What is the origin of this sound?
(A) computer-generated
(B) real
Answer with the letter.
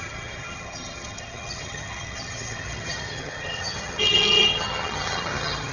A